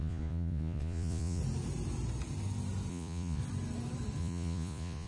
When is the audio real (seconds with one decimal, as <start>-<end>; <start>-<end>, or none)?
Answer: 1.4-2.9; 3.4-4.2